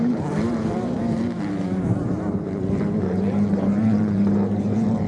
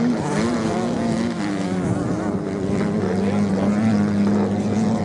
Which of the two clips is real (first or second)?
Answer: second